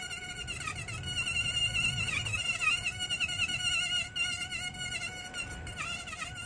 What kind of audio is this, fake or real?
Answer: real